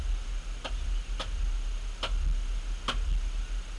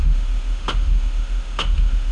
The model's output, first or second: second